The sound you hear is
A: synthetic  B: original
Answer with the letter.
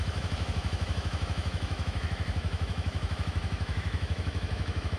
A